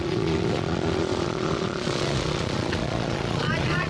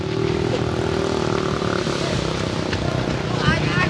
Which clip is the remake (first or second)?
first